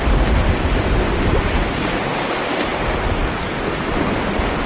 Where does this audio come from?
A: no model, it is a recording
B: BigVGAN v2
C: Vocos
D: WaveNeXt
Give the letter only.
A